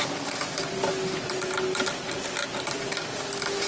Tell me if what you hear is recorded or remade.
recorded